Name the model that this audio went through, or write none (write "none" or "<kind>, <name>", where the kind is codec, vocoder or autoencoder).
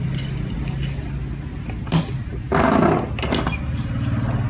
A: none